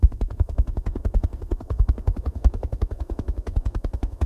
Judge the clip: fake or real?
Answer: fake